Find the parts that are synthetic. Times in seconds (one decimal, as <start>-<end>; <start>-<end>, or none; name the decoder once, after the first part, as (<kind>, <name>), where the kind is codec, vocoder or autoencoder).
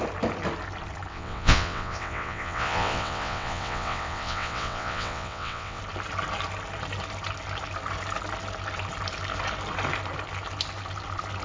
1.1-5.8 (vocoder, WaveNeXt)